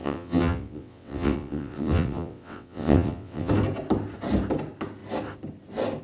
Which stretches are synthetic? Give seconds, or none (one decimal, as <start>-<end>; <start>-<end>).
0.0-3.5